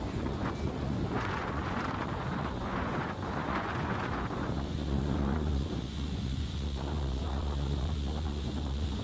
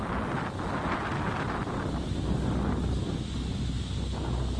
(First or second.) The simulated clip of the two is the first